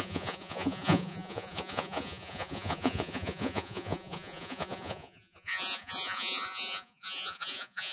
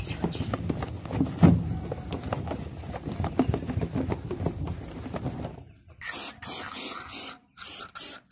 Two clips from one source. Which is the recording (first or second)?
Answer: second